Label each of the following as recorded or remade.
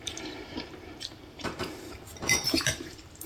remade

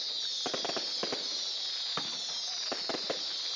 recorded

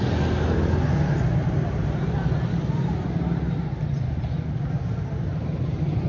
recorded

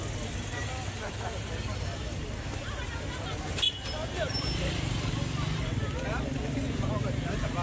recorded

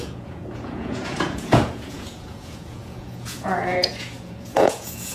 remade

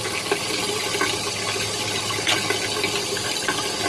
recorded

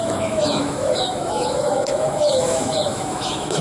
remade